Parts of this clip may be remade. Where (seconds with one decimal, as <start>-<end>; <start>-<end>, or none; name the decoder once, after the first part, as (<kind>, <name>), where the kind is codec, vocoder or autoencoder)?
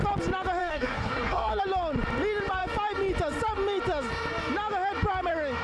0.6-1.6 (codec, SNAC)